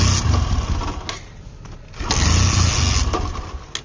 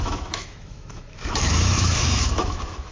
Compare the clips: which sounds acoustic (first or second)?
first